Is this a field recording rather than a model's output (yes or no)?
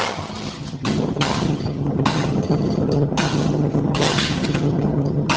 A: no